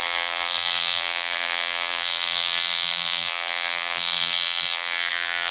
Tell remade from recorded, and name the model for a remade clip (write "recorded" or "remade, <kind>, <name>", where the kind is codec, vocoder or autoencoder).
remade, vocoder, BigVGAN v2